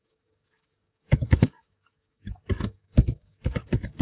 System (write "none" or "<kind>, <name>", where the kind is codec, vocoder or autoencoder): codec, DAC